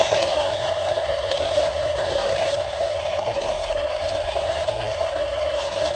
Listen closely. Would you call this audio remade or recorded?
remade